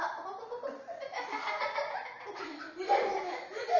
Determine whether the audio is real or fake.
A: real